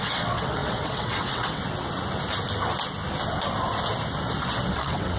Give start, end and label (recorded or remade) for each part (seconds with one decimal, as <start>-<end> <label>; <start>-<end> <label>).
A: 0.0-1.6 remade; 1.6-4.7 recorded; 4.7-5.2 remade